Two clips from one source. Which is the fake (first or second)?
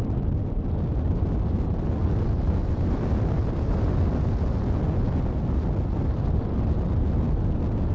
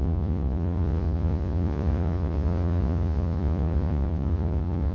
second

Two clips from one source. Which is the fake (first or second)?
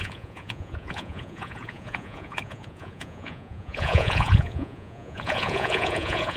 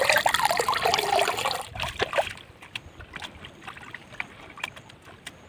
first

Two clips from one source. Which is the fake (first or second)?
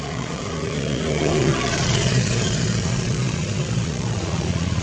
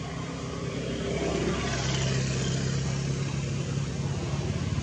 first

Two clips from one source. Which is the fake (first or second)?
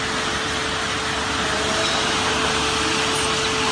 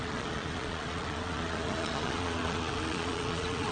second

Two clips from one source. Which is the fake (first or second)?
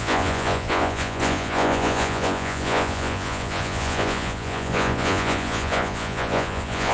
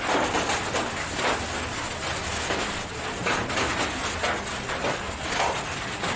first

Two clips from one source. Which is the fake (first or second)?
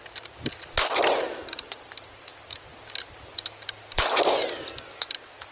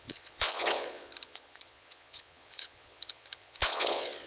second